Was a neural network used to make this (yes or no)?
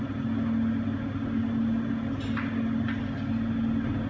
no